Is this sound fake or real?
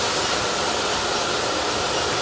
real